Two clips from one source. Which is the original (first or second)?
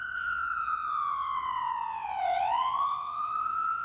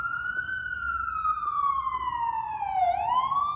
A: second